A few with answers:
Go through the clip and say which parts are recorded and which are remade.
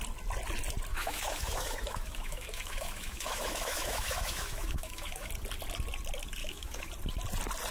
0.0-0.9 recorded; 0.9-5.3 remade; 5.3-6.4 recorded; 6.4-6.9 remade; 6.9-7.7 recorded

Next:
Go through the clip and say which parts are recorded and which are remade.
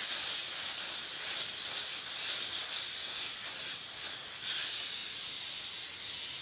0.0-6.4 recorded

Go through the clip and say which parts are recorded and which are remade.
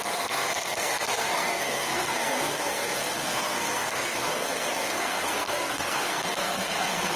0.0-7.2 remade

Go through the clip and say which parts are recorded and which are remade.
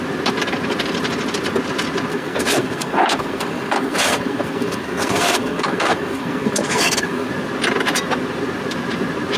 0.0-2.1 recorded; 2.1-7.3 remade; 7.3-9.4 recorded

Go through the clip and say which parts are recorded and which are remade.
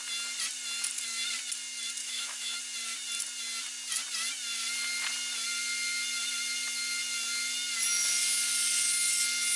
0.0-2.0 recorded; 2.0-2.6 remade; 2.6-9.6 recorded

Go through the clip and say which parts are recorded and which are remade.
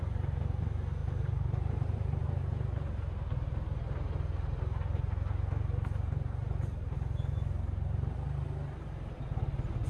0.0-1.0 recorded; 1.0-2.2 remade; 2.2-9.9 recorded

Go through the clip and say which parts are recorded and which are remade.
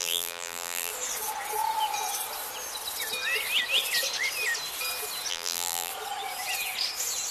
0.0-0.9 remade; 0.9-5.3 recorded; 5.3-5.9 remade; 5.9-7.3 recorded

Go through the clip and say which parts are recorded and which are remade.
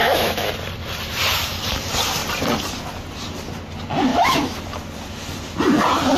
0.0-0.5 remade; 0.5-4.1 recorded; 4.1-4.6 remade; 4.6-6.2 recorded